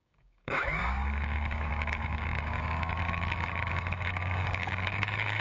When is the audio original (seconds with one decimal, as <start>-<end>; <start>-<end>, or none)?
none